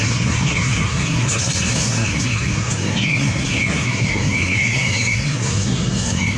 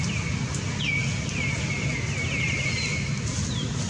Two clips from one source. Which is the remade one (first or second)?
first